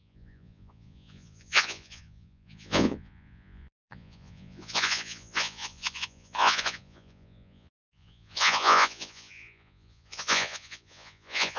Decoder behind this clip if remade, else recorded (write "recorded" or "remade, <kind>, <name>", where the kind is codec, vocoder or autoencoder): remade, vocoder, Vocos